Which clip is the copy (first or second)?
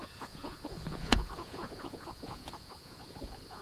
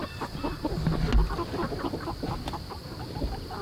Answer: first